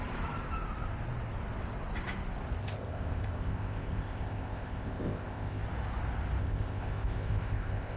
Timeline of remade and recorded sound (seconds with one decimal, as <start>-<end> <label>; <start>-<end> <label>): 0.0-2.6 recorded; 2.6-5.6 remade; 5.6-6.4 recorded; 6.4-8.0 remade

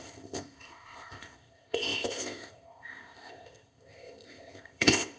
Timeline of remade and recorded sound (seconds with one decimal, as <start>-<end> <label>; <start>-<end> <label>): 0.0-5.2 remade